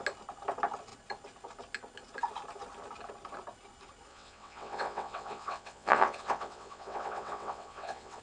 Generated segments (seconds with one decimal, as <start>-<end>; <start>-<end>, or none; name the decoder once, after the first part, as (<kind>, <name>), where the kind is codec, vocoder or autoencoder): 4.1-8.2 (vocoder, WaveNeXt)